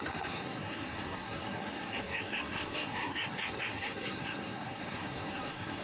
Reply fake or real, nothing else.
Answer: fake